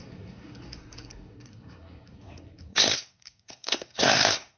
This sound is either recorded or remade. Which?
remade